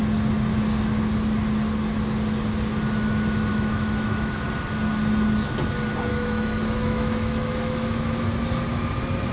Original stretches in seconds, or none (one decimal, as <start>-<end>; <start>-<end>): 0.0-3.5; 4.5-6.1; 8.1-9.3

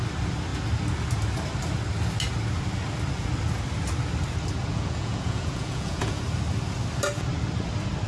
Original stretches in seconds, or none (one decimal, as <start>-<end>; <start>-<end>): 0.0-4.7; 6.2-8.1

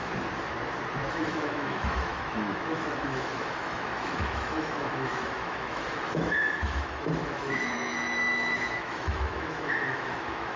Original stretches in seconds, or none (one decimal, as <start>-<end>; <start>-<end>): 0.0-1.1

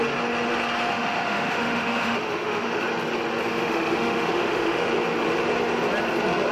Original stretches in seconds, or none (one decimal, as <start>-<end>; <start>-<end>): 0.0-0.9; 2.8-3.5; 4.9-6.5

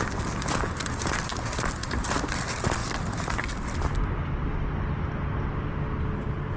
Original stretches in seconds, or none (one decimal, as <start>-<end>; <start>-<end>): 0.0-6.6